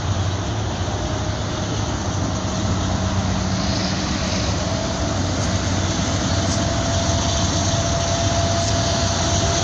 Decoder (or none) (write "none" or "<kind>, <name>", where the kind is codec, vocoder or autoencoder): none